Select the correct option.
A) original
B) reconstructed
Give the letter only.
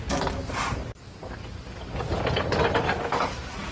A